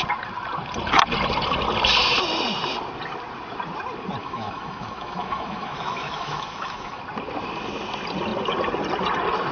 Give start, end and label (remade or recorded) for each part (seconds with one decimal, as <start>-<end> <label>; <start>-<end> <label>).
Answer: 0.0-4.2 recorded; 4.2-7.0 remade; 7.0-9.5 recorded